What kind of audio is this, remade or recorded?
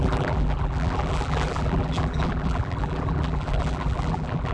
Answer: remade